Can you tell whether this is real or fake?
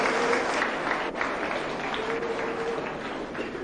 real